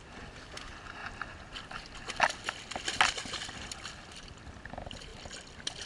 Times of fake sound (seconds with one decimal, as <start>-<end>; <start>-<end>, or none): none